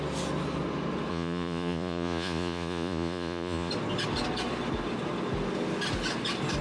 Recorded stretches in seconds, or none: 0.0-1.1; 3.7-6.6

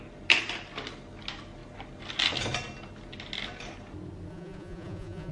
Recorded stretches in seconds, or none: 0.0-4.3

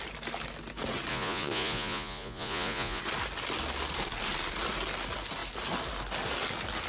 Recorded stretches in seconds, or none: 0.0-1.1; 3.0-6.9

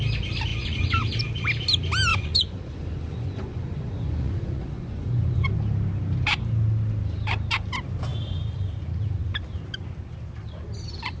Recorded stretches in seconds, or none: 0.0-0.5; 1.0-2.1; 5.5-11.2

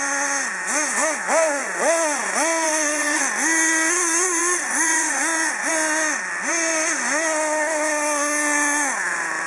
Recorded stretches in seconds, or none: 0.0-1.6; 3.2-4.4; 5.7-9.5

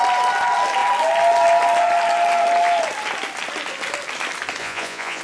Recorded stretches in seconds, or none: 0.0-4.6

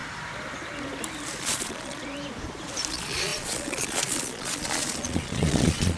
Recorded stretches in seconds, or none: 0.0-1.4; 2.0-2.9